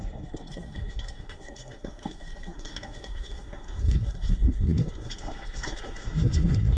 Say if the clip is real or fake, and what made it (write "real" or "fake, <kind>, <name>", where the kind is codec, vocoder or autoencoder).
fake, codec, SNAC